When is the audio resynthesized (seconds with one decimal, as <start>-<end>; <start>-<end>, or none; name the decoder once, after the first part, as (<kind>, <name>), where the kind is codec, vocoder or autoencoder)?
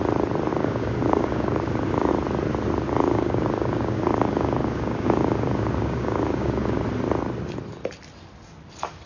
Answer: 0.5-2.1 (codec, DAC); 3.0-6.8